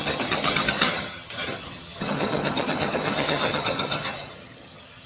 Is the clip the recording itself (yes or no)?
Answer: no